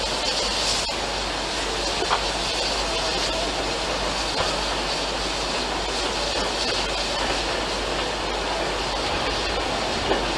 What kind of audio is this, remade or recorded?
recorded